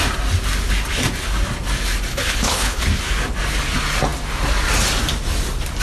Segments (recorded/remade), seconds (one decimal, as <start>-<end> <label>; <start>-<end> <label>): 0.0-2.1 recorded; 2.1-2.8 remade; 2.8-5.8 recorded